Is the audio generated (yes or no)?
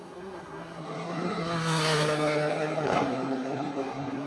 yes